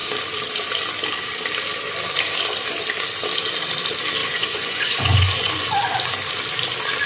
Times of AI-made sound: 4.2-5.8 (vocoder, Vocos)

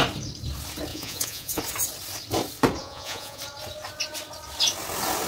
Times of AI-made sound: 0.9-1.6 (vocoder, Vocos); 2.8-3.4